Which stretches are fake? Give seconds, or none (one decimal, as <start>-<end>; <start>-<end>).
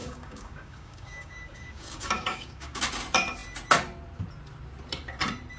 0.0-2.8